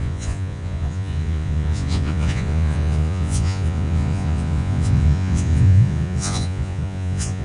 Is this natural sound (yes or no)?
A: no